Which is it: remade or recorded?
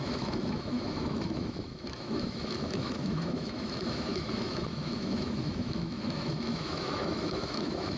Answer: remade